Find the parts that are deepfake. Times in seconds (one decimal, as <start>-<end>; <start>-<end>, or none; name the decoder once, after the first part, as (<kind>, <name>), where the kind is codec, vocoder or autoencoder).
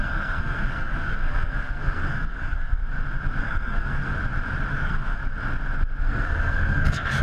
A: 0.0-2.8 (codec, SNAC); 3.4-4.1; 4.7-5.2; 6.0-7.2